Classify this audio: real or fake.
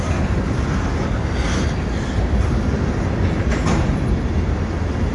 real